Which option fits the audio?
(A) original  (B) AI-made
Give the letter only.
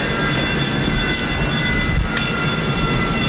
A